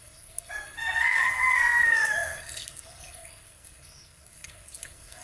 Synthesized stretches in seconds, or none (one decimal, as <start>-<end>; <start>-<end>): 0.0-5.2